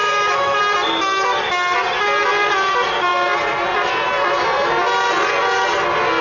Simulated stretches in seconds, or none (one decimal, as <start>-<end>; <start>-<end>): 0.0-0.6